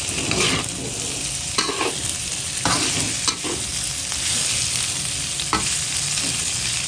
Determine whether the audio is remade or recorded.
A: recorded